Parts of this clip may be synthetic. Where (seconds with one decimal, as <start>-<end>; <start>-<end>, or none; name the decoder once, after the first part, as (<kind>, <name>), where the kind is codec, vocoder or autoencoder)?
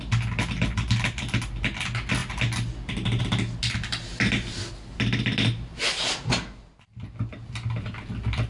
none